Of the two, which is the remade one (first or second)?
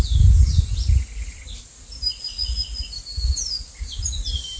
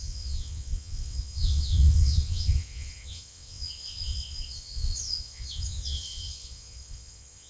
second